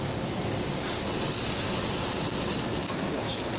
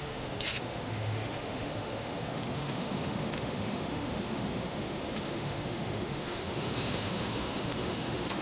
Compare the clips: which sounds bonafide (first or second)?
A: first